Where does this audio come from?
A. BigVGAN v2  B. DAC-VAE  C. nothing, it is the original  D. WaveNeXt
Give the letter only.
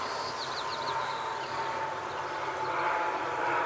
C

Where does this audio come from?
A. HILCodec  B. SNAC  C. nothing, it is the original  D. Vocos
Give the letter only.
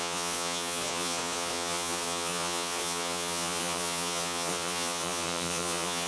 D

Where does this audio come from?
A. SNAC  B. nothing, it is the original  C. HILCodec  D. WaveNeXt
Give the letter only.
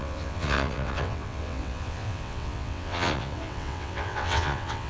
D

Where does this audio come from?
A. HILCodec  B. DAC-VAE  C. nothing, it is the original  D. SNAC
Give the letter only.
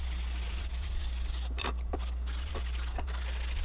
C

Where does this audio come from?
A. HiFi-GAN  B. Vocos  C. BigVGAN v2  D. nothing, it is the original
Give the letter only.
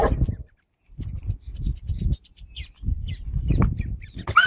D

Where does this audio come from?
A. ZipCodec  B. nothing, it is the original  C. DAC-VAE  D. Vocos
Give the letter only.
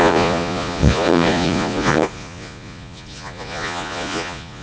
D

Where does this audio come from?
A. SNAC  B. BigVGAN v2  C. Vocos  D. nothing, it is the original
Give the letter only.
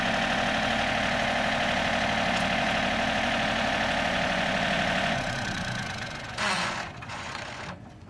C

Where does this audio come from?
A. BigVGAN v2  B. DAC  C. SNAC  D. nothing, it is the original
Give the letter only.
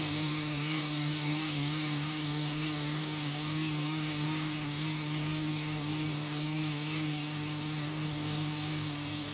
B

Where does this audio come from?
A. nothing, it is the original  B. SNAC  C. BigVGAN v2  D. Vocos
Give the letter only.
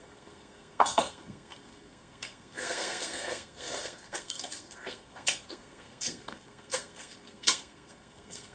B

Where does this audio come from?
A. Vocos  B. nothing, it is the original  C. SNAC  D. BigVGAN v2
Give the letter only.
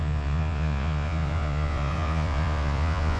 A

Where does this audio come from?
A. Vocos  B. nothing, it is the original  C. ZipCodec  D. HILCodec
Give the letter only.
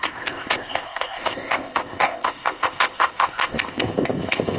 C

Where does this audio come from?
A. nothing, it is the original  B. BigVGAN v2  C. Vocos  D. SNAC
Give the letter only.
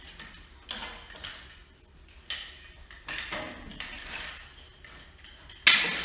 A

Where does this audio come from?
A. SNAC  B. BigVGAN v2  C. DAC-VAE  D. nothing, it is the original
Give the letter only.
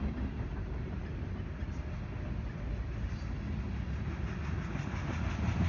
D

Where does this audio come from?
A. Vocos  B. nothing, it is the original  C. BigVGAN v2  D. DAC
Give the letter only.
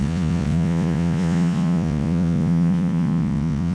A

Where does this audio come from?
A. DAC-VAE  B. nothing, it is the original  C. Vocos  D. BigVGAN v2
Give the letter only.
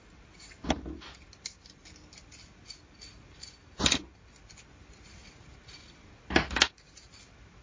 B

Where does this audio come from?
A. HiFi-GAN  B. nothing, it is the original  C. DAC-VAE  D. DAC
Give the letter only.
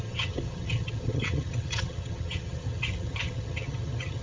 A